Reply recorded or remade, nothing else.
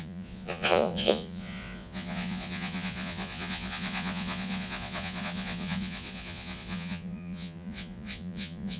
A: remade